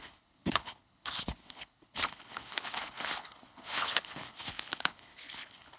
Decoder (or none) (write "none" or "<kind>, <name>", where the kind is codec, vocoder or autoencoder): codec, HILCodec